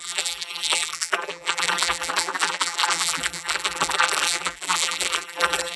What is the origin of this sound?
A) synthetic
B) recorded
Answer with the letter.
A